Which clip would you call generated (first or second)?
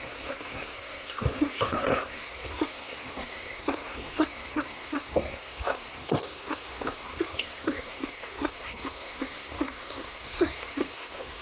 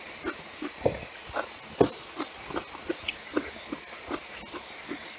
first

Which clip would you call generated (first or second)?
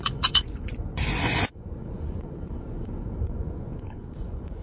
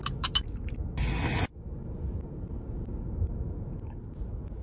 first